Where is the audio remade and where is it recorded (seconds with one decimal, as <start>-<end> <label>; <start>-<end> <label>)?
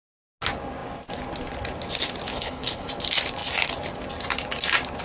0.0-2.3 recorded; 2.3-2.9 remade; 2.9-5.0 recorded